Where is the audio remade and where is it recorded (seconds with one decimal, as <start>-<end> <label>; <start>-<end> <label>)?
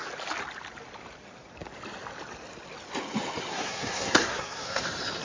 0.0-3.5 recorded; 3.5-4.8 remade; 4.8-5.2 recorded